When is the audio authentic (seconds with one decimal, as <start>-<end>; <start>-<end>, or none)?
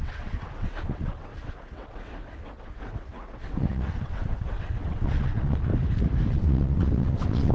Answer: 5.7-6.3